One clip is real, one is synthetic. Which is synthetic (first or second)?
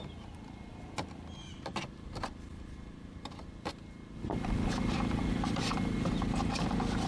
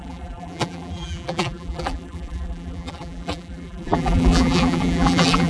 second